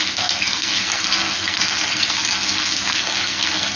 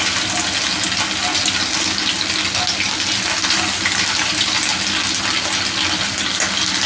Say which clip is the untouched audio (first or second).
second